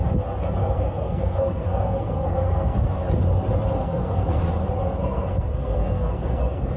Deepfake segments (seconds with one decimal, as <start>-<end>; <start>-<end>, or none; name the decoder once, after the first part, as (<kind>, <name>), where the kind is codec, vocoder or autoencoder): 0.6-3.0 (codec, SNAC); 3.8-4.4; 5.0-6.8